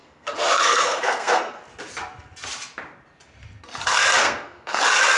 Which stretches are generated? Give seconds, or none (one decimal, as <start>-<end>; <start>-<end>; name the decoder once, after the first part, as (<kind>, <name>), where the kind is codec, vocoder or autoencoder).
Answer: 0.0-1.6 (codec, SNAC); 4.2-4.8

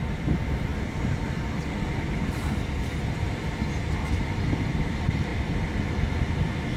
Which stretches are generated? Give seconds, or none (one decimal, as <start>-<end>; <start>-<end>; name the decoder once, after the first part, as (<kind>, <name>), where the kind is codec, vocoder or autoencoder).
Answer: none

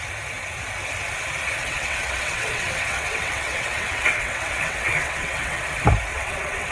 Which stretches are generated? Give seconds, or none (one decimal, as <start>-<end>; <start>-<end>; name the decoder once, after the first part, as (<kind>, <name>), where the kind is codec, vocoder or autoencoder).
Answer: 1.6-5.6 (vocoder, WaveNeXt); 6.1-6.7

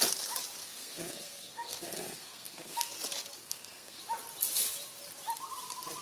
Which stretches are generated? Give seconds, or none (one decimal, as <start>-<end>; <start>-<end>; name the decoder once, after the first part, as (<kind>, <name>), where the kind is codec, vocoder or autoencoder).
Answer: 0.6-2.9 (codec, SNAC); 3.4-4.0

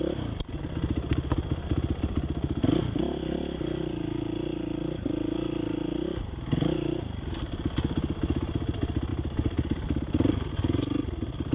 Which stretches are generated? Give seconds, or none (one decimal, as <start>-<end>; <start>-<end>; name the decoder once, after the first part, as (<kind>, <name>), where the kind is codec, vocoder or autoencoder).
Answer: none

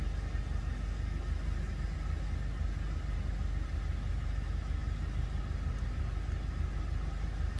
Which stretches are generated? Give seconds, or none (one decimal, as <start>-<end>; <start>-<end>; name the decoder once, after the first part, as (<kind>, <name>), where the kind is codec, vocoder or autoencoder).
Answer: none

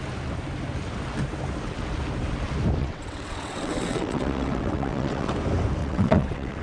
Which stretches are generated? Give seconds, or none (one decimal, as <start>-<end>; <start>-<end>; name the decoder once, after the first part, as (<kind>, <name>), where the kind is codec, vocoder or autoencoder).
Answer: 2.8-5.3 (vocoder, WaveNeXt); 5.8-6.6